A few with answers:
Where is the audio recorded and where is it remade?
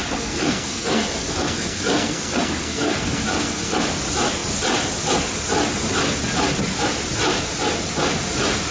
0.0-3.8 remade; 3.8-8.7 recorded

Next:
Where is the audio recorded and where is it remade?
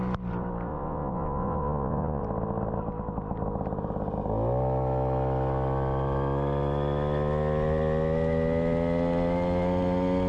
0.0-0.7 recorded; 0.7-2.2 remade; 2.2-10.3 recorded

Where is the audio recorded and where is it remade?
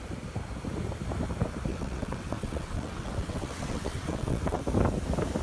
0.0-1.7 recorded; 1.7-4.6 remade; 4.6-5.4 recorded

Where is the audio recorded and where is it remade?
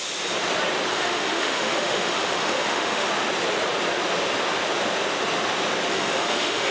0.0-0.9 recorded; 0.9-3.1 remade; 3.1-5.9 recorded; 5.9-6.7 remade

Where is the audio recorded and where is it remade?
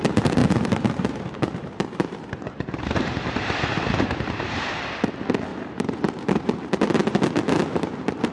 0.0-0.4 recorded; 0.4-4.7 remade; 4.7-5.5 recorded; 5.5-6.6 remade; 6.6-8.3 recorded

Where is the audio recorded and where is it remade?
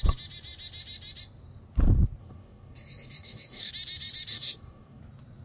0.0-2.2 recorded; 2.2-3.7 remade; 3.7-4.3 recorded; 4.3-5.0 remade; 5.0-5.4 recorded